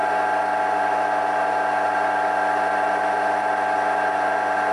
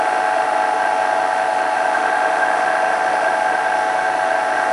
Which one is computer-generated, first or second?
second